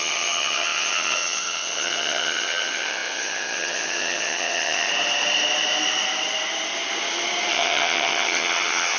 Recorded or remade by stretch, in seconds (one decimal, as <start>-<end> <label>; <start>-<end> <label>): 0.0-4.9 remade; 4.9-7.5 recorded; 7.5-9.0 remade